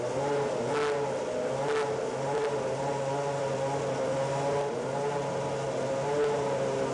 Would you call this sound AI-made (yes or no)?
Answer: no